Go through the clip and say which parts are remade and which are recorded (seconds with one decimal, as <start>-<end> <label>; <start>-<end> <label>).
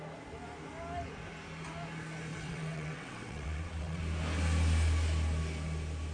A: 0.0-2.3 recorded; 2.3-4.0 remade; 4.0-6.1 recorded